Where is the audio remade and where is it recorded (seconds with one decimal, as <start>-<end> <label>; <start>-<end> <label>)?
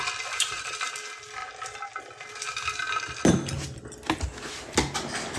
0.0-5.4 recorded